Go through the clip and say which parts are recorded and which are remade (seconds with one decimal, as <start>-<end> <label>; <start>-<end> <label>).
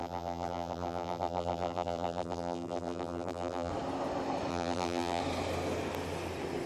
0.0-3.7 remade; 3.7-4.5 recorded; 4.5-5.2 remade; 5.2-6.7 recorded